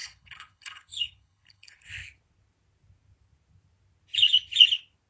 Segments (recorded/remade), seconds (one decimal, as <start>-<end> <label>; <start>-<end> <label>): 0.0-1.9 remade; 1.9-5.1 recorded